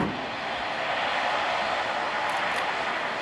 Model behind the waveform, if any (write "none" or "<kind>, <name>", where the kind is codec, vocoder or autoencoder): none